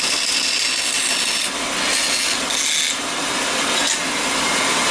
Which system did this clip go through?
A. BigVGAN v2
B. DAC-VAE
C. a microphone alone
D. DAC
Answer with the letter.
C